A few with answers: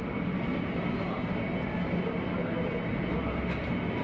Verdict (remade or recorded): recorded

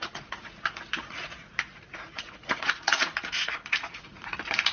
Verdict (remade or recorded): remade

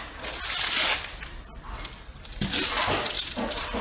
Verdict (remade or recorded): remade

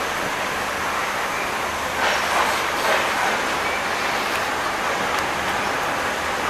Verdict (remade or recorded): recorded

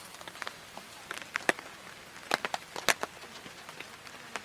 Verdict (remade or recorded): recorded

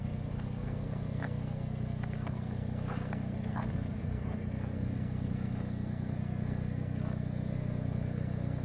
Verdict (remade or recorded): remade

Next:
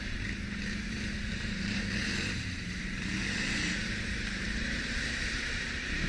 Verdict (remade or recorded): remade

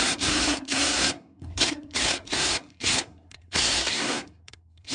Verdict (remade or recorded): remade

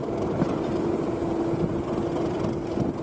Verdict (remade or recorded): recorded